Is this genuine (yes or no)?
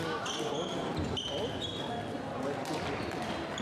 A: yes